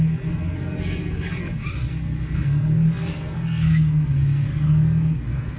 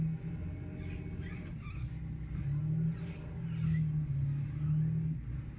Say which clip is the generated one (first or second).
first